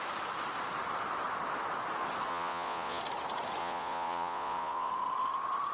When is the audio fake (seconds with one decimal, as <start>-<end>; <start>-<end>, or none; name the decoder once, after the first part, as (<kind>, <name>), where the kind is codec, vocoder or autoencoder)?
2.3-3.0 (vocoder, Vocos); 3.6-4.9